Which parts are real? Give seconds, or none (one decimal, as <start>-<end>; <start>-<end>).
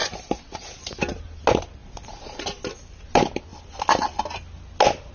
1.4-3.5; 4.2-5.1